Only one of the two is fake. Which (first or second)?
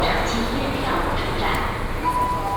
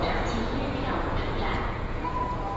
second